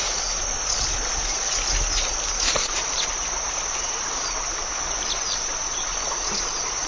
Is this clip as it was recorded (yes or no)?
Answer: yes